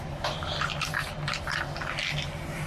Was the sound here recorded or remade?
recorded